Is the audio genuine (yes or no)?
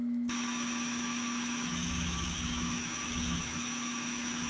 no